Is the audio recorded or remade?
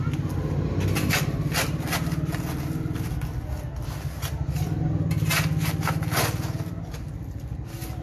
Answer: recorded